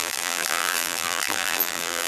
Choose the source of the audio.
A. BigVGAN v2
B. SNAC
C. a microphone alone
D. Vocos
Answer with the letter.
A